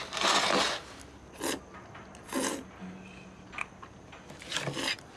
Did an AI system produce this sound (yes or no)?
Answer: no